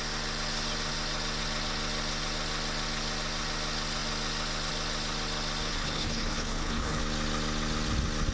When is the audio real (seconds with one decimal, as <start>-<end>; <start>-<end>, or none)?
0.0-5.7; 7.0-8.3